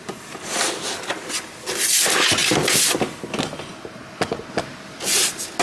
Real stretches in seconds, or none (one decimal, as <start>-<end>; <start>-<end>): 0.0-5.6